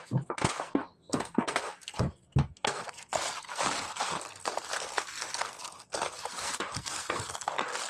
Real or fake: fake